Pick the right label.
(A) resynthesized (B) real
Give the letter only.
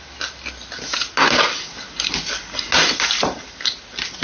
B